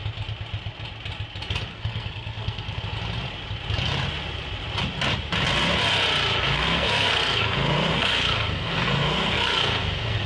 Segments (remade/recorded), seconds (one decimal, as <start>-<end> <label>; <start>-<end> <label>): 0.0-1.7 recorded; 1.7-2.8 remade; 2.8-6.4 recorded; 6.4-10.3 remade